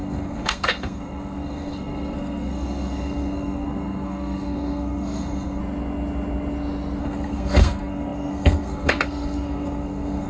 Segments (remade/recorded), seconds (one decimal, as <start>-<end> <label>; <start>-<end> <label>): 0.0-5.6 remade; 5.6-7.0 recorded; 7.0-10.3 remade